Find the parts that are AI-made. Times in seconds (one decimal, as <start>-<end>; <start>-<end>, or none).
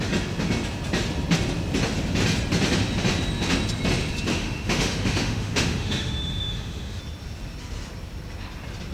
4.3-7.0